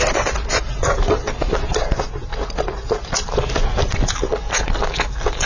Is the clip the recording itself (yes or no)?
yes